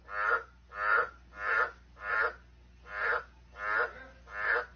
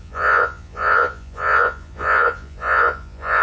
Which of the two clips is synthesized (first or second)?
second